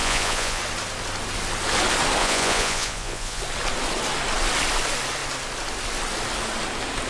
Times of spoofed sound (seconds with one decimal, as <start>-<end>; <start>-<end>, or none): 0.0-0.6; 2.2-3.4